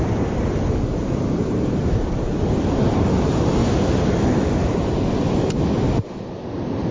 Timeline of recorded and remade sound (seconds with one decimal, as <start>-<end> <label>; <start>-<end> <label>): 0.0-0.9 recorded; 0.9-2.8 remade; 2.8-3.6 recorded; 3.6-4.9 remade; 4.9-6.9 recorded